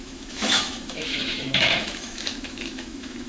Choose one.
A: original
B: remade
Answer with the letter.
B